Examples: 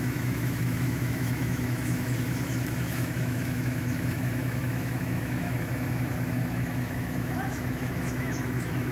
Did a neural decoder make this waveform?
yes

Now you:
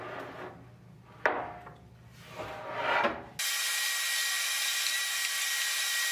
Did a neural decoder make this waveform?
no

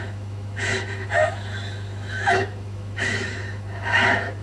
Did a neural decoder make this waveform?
yes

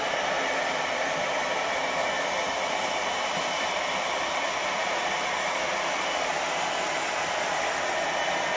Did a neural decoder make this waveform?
no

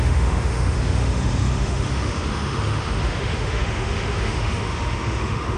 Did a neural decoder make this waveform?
yes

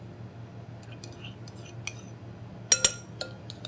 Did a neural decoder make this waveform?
no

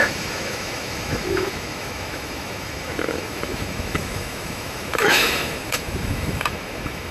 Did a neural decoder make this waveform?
yes